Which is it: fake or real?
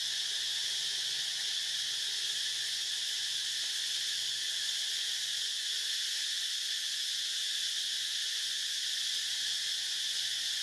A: fake